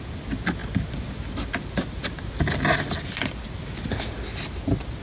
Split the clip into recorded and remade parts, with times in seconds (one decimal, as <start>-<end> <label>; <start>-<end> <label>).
0.0-5.0 recorded